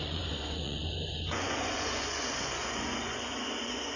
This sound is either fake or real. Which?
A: fake